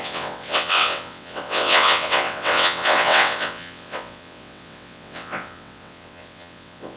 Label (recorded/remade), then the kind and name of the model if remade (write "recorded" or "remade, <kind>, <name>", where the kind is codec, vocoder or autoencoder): remade, vocoder, WaveNeXt